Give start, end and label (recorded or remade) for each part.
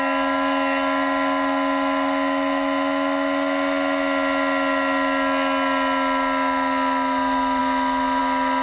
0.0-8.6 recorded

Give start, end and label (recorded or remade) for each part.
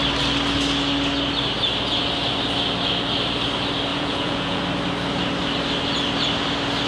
0.0-3.9 recorded; 3.9-4.6 remade; 4.6-6.9 recorded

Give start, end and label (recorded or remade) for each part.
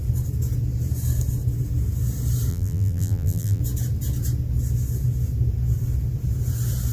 0.0-2.5 recorded; 2.5-3.6 remade; 3.6-6.9 recorded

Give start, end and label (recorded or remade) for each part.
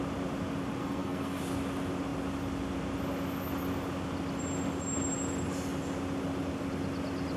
0.0-0.8 recorded; 0.8-1.4 remade; 1.4-7.4 recorded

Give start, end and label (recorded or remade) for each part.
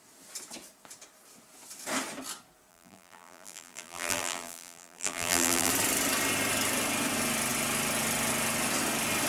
0.0-2.7 recorded; 2.7-5.7 remade; 5.7-9.3 recorded